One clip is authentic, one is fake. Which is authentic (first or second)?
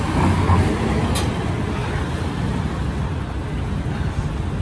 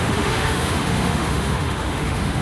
first